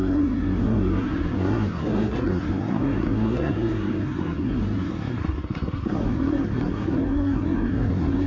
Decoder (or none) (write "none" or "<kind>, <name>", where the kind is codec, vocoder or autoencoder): codec, SNAC